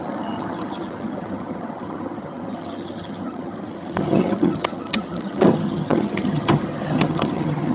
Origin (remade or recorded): remade